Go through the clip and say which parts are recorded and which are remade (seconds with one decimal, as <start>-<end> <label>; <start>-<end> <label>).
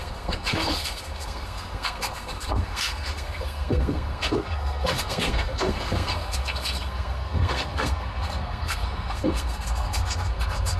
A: 0.0-10.8 remade